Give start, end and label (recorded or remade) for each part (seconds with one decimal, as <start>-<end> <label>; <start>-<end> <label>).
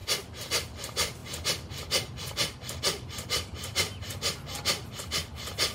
0.0-0.5 recorded; 0.5-5.7 remade